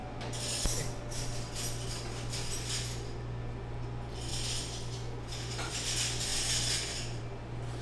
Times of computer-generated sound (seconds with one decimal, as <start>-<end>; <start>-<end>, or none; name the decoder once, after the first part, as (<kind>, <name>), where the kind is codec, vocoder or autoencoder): none